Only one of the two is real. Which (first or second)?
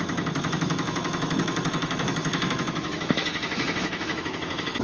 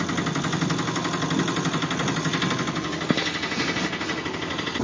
second